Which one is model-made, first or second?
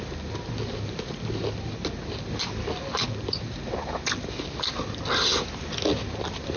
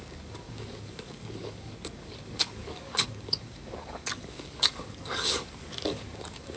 second